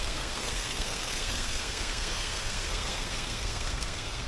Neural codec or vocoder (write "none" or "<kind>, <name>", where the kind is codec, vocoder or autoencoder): codec, SNAC